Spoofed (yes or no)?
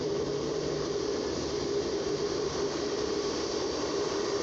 yes